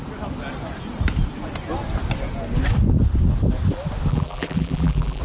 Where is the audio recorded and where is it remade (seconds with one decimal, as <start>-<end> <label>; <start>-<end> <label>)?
0.0-4.1 recorded; 4.1-5.2 remade